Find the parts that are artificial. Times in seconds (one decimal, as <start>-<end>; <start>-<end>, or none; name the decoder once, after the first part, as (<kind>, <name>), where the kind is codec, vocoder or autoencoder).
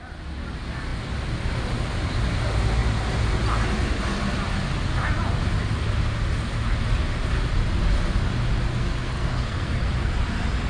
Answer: 8.7-10.1 (codec, SNAC)